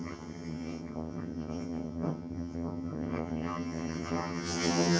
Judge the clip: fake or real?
fake